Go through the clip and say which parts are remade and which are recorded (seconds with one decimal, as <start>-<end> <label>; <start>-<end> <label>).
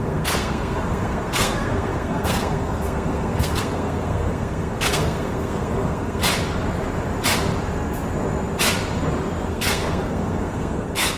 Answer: 0.0-6.2 remade; 6.2-9.5 recorded; 9.5-11.2 remade